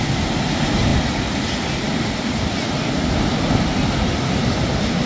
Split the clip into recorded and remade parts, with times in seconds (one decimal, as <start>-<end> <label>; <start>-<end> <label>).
0.0-5.1 recorded